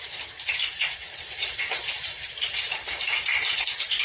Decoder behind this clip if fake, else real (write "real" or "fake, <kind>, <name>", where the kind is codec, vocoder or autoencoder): fake, vocoder, BigVGAN v2